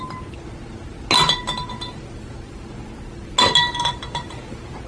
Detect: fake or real real